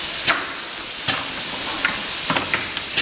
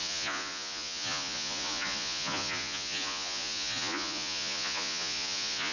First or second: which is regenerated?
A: second